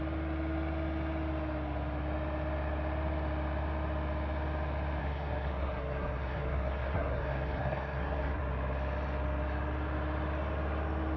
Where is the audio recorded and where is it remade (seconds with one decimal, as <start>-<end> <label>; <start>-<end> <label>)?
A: 0.0-5.0 recorded; 5.0-8.4 remade; 8.4-11.2 recorded